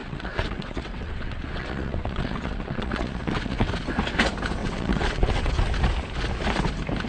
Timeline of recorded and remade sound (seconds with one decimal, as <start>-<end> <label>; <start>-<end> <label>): 0.0-3.7 remade; 3.7-4.6 recorded; 4.6-5.5 remade; 5.5-7.1 recorded